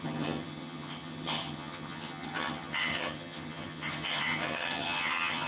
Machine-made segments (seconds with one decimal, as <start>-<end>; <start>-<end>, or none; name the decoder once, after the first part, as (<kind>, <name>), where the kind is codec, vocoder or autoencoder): 0.0-5.5 (vocoder, HiFi-GAN)